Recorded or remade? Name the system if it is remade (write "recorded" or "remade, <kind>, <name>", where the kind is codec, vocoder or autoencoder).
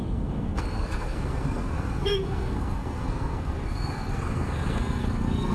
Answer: remade, codec, SNAC